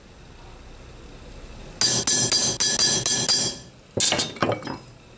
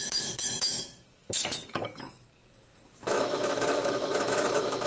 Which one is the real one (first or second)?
first